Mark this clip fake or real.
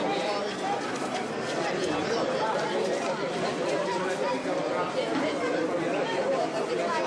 fake